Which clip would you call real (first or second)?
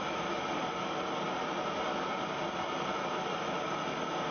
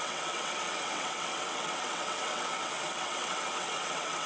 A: first